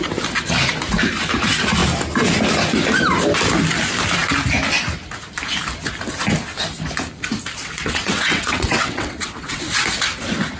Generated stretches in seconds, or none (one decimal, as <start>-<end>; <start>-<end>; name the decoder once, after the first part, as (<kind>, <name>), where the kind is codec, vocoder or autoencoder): 7.6-9.6 (vocoder, WaveNeXt)